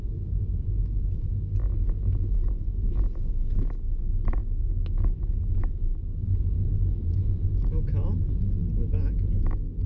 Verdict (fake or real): real